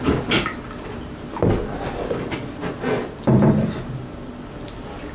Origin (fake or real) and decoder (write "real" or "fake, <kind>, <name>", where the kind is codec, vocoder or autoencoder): real